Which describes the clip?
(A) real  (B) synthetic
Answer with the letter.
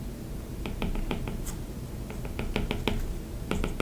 A